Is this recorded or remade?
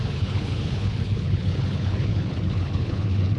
remade